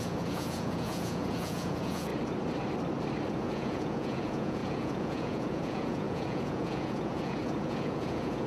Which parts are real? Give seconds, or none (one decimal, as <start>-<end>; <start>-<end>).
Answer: 2.1-3.3